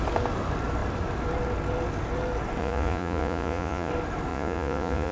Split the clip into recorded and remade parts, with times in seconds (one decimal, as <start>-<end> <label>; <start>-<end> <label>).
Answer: 0.0-2.6 recorded; 2.6-3.9 remade; 3.9-4.3 recorded; 4.3-5.1 remade